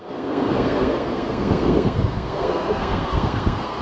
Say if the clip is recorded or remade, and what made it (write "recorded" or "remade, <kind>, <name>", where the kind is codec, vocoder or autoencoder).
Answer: remade, codec, SNAC